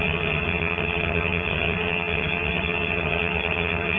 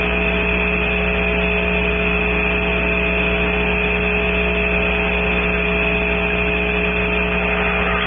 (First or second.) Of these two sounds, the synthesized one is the first